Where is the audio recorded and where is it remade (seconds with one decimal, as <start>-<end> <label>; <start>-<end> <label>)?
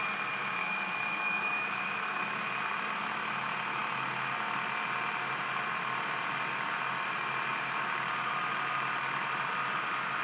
0.0-0.6 recorded; 0.6-2.2 remade; 2.2-10.2 recorded